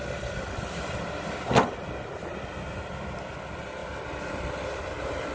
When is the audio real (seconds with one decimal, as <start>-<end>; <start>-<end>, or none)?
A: 0.0-5.3